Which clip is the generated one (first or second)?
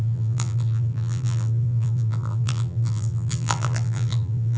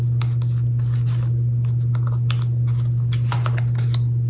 first